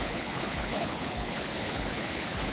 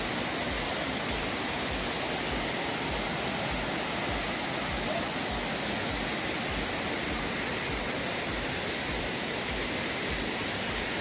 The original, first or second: second